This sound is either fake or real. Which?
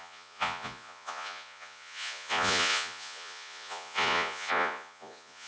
fake